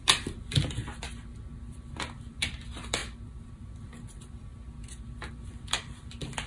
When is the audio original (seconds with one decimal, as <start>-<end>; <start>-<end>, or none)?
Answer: 0.8-1.6; 4.5-5.3